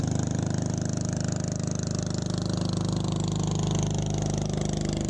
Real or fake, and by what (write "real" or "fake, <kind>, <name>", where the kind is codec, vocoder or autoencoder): real